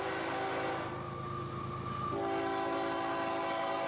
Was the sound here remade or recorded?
recorded